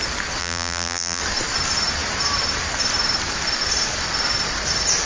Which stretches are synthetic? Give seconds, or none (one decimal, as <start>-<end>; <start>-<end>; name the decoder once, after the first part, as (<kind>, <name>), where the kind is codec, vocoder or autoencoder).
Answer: 0.4-1.2 (vocoder, BigVGAN v2)